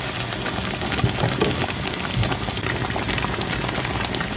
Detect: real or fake real